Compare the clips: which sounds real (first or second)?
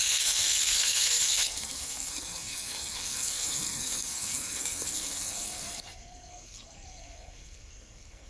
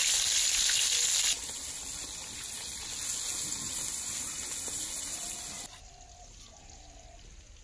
second